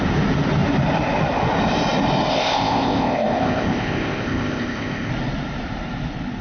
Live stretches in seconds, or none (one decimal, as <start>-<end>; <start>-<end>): 0.0-2.3; 5.1-6.4

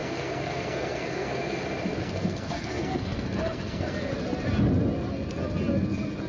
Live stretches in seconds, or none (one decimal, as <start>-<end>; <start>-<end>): 1.6-2.0; 4.1-6.3

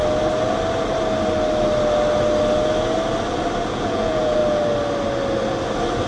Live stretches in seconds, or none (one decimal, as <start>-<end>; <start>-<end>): 0.0-3.7; 4.4-6.1

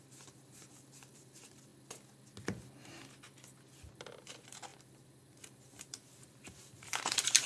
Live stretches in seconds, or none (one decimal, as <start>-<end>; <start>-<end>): 1.7-3.9

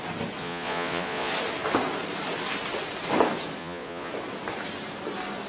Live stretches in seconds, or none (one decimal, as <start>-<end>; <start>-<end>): 0.0-0.4; 1.3-3.6; 4.1-5.5

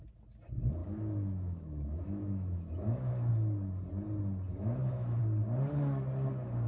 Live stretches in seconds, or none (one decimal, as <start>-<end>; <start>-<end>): 0.0-0.8; 3.3-4.5; 5.2-6.7

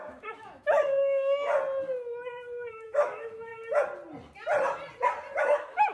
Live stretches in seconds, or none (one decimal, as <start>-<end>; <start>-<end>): 1.5-2.7; 3.5-5.4

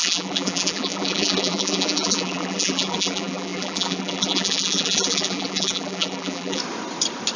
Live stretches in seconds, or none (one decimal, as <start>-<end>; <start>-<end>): 6.6-7.4